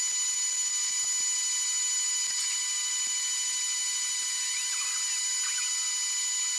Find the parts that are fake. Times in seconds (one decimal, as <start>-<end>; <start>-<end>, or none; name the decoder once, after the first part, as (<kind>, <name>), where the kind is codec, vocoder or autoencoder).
none